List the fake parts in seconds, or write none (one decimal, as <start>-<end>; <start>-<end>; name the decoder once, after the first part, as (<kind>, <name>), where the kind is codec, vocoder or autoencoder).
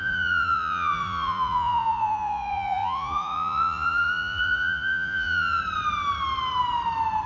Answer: 0.0-5.6 (vocoder, Vocos)